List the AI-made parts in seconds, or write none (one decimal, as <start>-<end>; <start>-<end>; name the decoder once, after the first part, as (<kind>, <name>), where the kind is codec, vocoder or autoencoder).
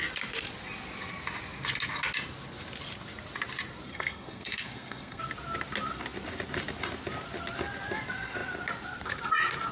3.9-5.2 (codec, SNAC)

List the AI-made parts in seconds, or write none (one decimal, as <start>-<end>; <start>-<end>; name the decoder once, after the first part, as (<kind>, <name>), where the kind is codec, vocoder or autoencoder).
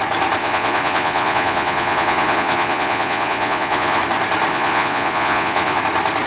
0.4-4.0 (vocoder, Vocos); 4.5-5.8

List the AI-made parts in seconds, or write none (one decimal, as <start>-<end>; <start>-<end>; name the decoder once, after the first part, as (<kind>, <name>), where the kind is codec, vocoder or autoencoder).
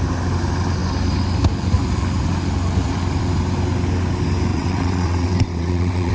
4.5-6.1 (vocoder, WaveNeXt)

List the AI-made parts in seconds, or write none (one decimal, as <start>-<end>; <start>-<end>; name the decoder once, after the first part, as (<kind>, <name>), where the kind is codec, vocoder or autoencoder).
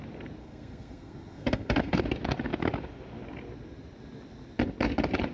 0.4-2.0 (codec, SNAC)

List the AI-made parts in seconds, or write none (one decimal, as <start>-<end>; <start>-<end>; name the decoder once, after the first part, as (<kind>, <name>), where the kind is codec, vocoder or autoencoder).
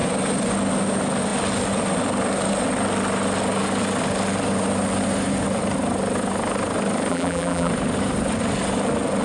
7.1-7.7 (vocoder, BigVGAN v2)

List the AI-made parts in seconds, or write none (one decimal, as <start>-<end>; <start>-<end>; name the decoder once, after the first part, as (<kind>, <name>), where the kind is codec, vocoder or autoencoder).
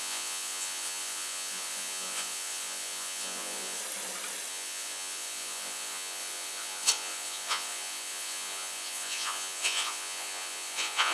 0.0-3.8 (vocoder, Vocos); 4.5-11.1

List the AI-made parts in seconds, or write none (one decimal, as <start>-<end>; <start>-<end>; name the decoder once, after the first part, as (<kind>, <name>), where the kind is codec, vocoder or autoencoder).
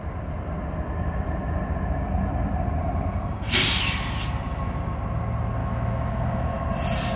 5.6-6.7 (autoencoder, DAC-VAE)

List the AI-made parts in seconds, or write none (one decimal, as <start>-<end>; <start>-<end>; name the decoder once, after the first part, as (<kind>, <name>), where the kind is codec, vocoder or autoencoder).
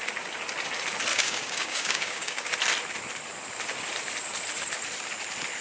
1.1-2.5 (codec, DAC)